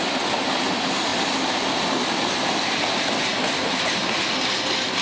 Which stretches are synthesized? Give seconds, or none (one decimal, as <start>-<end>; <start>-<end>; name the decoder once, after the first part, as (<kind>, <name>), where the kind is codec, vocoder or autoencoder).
none